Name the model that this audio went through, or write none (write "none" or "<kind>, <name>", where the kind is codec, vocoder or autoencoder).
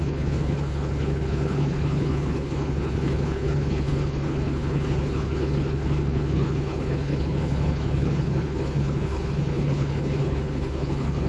codec, HILCodec